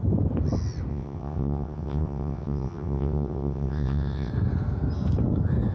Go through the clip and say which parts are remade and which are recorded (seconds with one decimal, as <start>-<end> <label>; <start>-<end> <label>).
0.0-0.9 recorded; 0.9-4.3 remade; 4.3-5.7 recorded